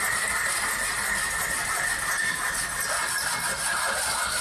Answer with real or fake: real